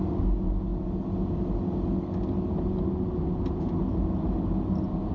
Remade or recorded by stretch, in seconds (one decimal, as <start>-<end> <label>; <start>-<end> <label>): 0.0-5.1 recorded